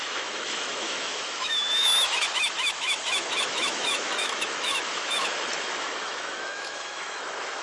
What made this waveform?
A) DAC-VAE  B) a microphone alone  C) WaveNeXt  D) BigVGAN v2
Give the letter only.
A